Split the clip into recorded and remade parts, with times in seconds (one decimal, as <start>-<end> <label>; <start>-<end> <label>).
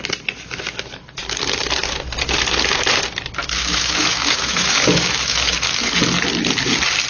0.0-3.4 recorded; 3.4-5.9 remade; 5.9-7.1 recorded